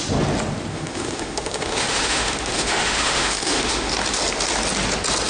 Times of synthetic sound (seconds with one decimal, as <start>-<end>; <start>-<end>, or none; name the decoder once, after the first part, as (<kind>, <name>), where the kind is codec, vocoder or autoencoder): 0.7-3.9 (autoencoder, DAC-VAE)

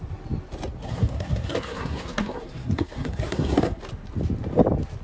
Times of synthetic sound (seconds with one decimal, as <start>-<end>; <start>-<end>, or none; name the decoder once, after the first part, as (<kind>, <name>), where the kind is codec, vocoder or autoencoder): 0.8-3.8 (codec, SNAC)